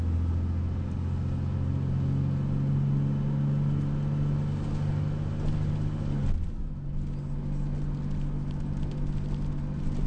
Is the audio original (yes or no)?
yes